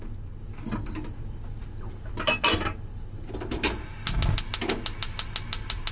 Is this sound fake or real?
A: real